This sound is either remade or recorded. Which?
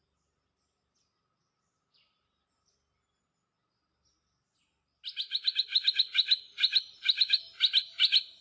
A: recorded